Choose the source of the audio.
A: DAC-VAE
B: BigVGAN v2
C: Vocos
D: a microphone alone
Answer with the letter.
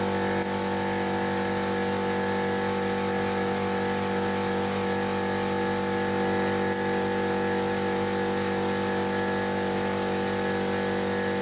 D